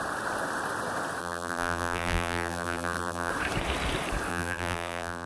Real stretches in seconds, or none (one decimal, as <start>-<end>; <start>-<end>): 0.0-1.2; 3.3-4.3

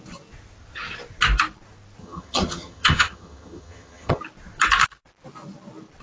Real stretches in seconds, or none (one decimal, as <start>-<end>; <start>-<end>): 0.0-2.0; 4.2-6.0

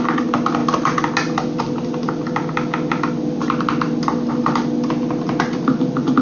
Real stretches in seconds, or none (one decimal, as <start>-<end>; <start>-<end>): 0.0-6.2

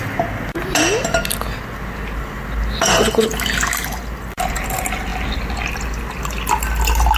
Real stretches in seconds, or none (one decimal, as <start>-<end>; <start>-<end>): 0.0-7.2